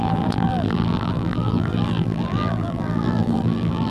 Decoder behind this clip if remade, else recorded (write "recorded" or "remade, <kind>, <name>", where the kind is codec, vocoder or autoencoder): remade, vocoder, BigVGAN v2